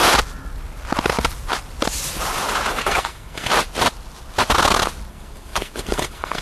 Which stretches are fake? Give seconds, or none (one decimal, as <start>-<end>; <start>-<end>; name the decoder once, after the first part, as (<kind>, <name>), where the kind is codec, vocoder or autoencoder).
2.7-3.5 (codec, SNAC); 5.1-6.4